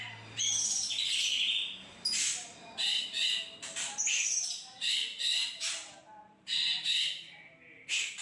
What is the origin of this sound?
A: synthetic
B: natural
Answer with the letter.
A